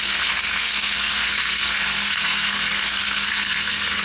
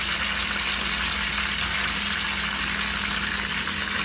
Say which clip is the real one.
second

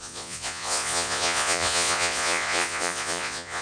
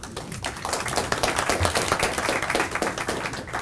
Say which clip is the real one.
second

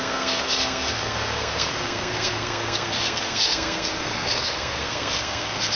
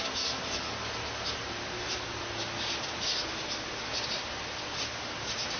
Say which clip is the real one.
second